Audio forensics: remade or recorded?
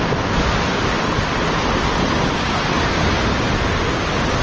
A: recorded